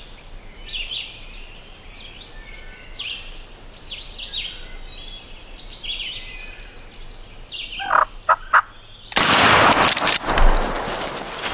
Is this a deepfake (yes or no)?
no